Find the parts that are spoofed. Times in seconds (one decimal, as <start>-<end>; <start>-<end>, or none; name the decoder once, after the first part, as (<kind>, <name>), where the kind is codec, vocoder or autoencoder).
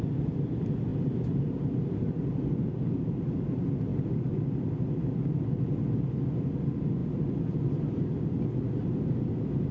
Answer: none